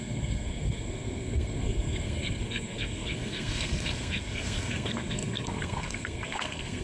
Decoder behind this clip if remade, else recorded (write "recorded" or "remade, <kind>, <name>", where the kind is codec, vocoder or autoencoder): remade, codec, SNAC